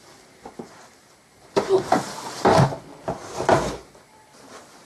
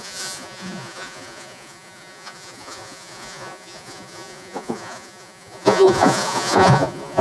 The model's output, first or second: second